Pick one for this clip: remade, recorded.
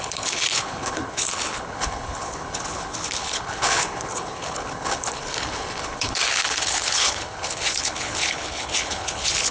remade